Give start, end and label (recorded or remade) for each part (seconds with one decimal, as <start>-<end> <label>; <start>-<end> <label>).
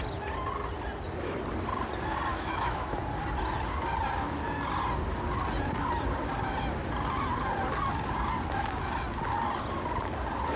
0.0-2.3 recorded; 2.3-3.0 remade; 3.0-10.6 recorded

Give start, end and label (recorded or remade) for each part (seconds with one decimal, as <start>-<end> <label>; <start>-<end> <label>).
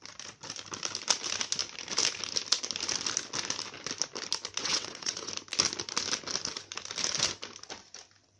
0.0-4.6 recorded; 4.6-5.3 remade; 5.3-8.4 recorded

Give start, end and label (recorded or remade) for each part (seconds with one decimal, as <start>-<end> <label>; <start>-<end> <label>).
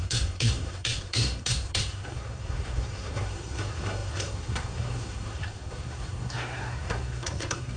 0.0-7.8 remade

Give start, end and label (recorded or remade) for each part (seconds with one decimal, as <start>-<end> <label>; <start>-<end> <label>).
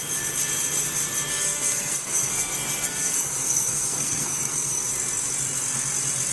0.0-1.3 recorded; 1.3-4.8 remade; 4.8-6.3 recorded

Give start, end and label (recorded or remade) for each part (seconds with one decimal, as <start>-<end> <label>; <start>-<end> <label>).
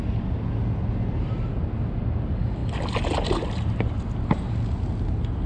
0.0-5.5 recorded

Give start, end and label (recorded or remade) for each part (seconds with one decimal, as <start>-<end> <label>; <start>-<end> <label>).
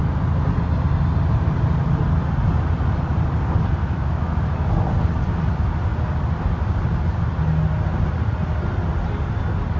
0.0-3.8 recorded; 3.8-4.7 remade; 4.7-9.8 recorded